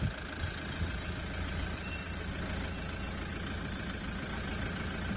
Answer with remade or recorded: recorded